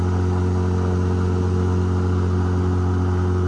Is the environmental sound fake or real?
real